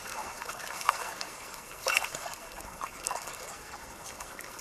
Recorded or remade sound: remade